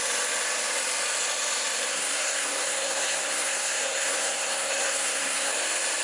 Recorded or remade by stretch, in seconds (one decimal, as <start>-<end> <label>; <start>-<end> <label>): 0.0-1.9 recorded; 1.9-5.5 remade; 5.5-6.0 recorded